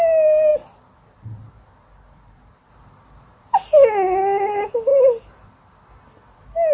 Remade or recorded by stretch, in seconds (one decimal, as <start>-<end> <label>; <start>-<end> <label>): 0.0-6.7 recorded